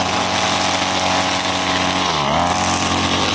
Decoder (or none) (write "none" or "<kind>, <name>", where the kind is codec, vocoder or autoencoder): none